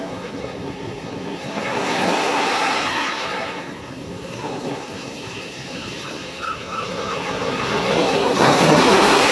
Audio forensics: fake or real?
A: fake